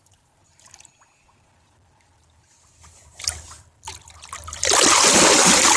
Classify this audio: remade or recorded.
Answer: recorded